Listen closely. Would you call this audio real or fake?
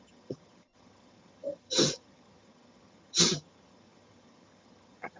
fake